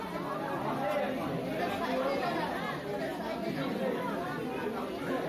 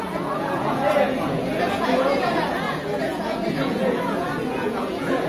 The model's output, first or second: second